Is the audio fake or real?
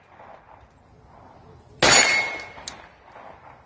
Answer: real